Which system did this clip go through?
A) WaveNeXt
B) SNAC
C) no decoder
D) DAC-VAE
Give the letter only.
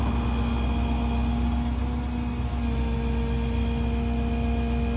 C